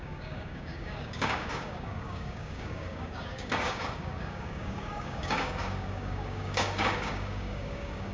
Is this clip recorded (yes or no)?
no